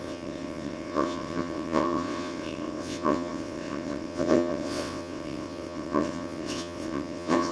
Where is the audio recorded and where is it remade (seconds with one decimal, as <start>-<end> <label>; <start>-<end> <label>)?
0.0-7.5 remade